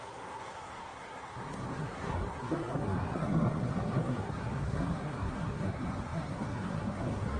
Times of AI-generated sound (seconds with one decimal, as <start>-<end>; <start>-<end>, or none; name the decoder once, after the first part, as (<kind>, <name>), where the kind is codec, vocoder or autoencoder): 0.0-7.4 (codec, SNAC)